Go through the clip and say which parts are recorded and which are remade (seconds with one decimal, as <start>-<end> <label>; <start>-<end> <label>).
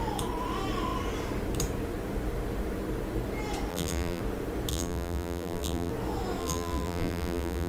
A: 0.0-3.7 recorded; 3.7-4.2 remade; 4.2-4.7 recorded; 4.7-5.9 remade; 5.9-6.4 recorded; 6.4-7.7 remade